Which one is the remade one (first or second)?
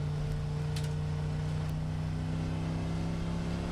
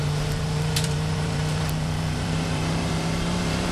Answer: second